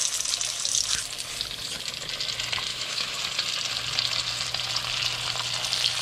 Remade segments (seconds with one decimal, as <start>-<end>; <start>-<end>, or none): 2.7-3.2